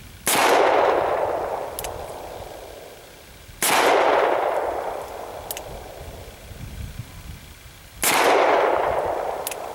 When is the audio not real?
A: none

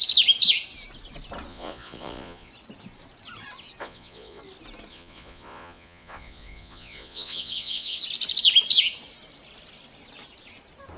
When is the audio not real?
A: 1.5-2.5 (vocoder, Vocos); 3.8-4.4; 4.9-8.0

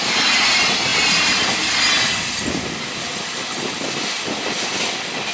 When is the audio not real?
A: 0.9-4.1 (vocoder, BigVGAN v2)

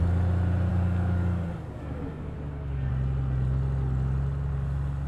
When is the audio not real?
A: 0.7-2.9 (codec, DAC)

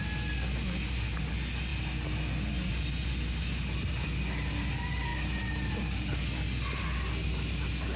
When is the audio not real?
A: none

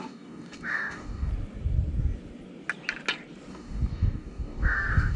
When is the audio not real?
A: 0.0-1.3 (codec, DAC); 3.5-5.2

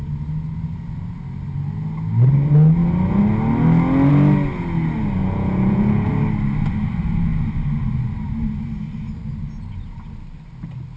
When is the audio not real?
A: 5.2-6.1 (vocoder, Vocos)